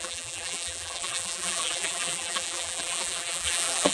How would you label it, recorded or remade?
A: remade